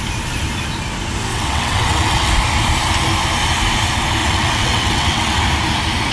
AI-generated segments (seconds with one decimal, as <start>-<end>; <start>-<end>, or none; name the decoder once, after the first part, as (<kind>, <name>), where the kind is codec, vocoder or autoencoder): 1.3-2.3 (vocoder, WaveNeXt); 4.2-5.4